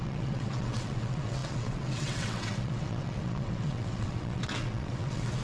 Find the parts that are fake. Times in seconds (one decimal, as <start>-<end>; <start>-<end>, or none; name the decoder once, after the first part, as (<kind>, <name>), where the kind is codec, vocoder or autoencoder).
0.0-5.4 (vocoder, WaveNeXt)